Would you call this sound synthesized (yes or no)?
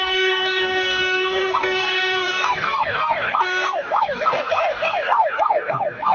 yes